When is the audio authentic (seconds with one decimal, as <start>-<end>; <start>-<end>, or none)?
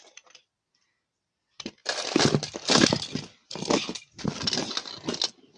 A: 0.0-5.6